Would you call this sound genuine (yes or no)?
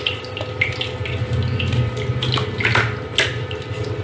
yes